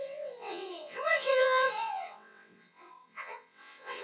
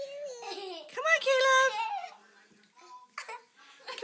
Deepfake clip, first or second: first